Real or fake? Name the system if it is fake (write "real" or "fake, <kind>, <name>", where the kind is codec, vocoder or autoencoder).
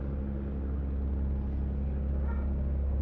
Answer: real